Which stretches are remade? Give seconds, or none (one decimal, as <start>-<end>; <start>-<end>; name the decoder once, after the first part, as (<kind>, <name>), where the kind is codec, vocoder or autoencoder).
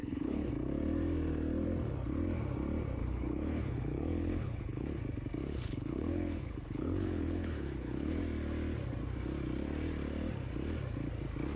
0.0-0.5 (codec, HILCodec); 3.0-5.0; 5.4-8.2